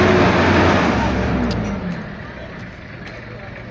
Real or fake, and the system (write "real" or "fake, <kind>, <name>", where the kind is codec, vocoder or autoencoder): real